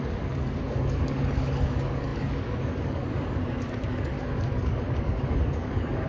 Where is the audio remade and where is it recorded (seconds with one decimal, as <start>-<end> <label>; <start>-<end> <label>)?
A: 0.0-6.1 remade